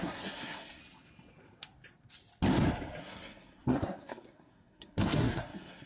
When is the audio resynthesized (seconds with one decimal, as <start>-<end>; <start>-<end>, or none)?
0.0-0.8; 3.0-5.9